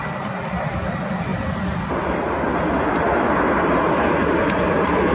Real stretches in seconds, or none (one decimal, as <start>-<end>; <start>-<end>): 0.0-5.1